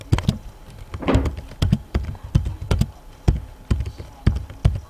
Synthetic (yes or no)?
no